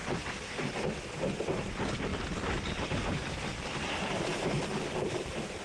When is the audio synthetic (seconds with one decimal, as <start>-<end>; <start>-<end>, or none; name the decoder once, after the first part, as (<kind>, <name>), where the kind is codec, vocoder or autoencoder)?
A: none